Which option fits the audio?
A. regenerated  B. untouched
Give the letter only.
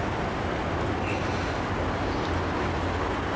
B